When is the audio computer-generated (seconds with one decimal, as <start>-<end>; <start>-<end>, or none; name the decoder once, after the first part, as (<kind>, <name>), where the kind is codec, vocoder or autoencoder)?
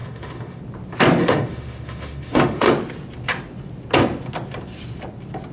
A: 0.0-0.6 (autoencoder, DAC-VAE); 1.2-2.7